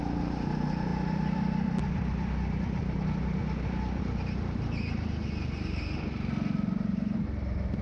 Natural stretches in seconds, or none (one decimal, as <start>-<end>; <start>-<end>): 0.0-0.9; 3.0-7.8